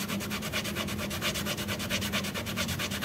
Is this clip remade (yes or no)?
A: no